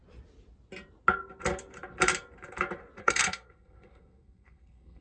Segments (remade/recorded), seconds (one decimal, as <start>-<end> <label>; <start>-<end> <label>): 0.0-3.0 recorded; 3.0-5.0 remade

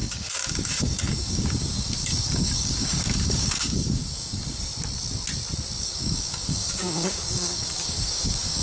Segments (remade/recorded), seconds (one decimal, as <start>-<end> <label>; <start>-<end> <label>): 0.0-4.7 remade; 4.7-5.8 recorded; 5.8-8.6 remade

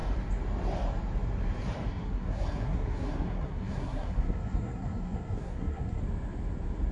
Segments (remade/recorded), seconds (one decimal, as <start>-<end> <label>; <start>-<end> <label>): 0.0-1.9 recorded; 1.9-6.0 remade; 6.0-6.9 recorded

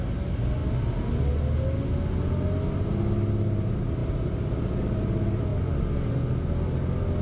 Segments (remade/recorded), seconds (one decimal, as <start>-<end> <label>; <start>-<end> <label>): 0.0-7.2 recorded

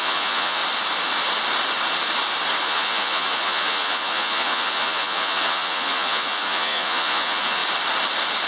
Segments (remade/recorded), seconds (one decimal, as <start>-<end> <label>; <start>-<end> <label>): 0.0-0.6 remade; 0.6-2.6 recorded; 2.6-7.6 remade; 7.6-8.5 recorded

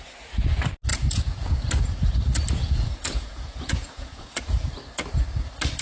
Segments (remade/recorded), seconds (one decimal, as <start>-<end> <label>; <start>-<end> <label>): 0.0-0.9 recorded; 0.9-1.7 remade; 1.7-2.6 recorded; 2.6-4.4 remade; 4.4-5.8 recorded

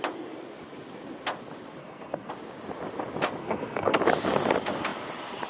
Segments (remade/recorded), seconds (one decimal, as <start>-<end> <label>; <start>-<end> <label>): 0.0-1.8 recorded; 1.8-2.3 remade; 2.3-3.4 recorded; 3.4-4.0 remade; 4.0-5.5 recorded

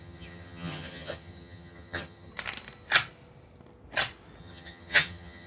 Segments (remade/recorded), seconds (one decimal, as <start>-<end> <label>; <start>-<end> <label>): 0.0-2.3 remade; 2.3-4.4 recorded; 4.4-5.5 remade